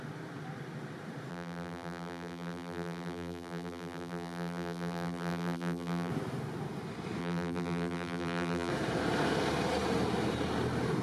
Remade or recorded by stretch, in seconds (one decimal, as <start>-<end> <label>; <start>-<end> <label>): 0.0-1.3 recorded; 1.3-6.1 remade; 6.1-7.2 recorded; 7.2-8.7 remade; 8.7-11.0 recorded